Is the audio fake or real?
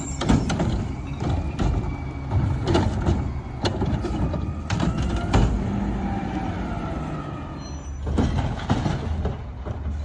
real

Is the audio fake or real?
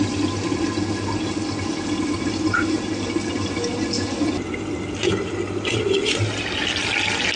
real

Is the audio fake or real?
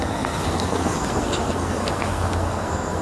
fake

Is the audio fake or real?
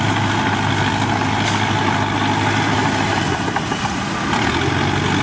real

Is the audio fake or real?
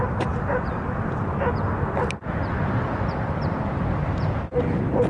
real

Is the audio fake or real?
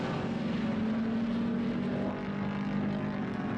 real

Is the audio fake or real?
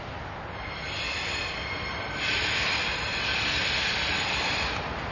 real